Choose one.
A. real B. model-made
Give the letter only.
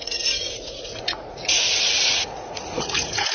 B